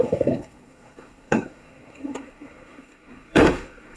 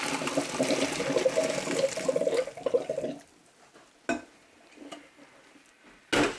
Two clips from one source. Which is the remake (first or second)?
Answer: first